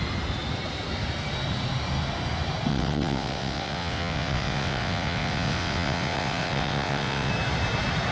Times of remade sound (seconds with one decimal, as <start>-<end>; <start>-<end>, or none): 2.7-7.3